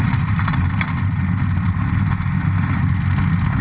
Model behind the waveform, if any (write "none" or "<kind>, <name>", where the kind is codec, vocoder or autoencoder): none